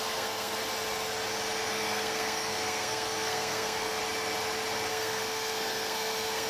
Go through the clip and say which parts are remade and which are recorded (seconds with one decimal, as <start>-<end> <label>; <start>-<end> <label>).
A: 0.0-0.6 remade; 0.6-1.7 recorded; 1.7-4.0 remade; 4.0-4.9 recorded; 4.9-6.5 remade